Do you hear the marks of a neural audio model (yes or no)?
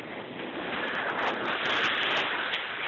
no